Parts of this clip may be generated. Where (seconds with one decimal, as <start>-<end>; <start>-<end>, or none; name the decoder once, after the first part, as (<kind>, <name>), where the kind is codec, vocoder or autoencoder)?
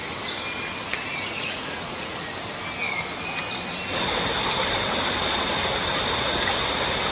1.1-2.3 (vocoder, Vocos)